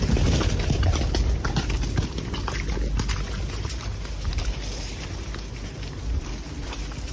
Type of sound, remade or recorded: recorded